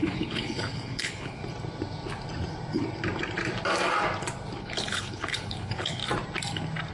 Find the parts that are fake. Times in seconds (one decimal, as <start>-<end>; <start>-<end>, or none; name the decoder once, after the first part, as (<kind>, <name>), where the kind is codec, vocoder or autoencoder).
0.0-1.4 (codec, HILCodec); 4.6-6.0